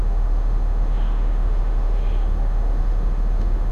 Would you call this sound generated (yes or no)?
yes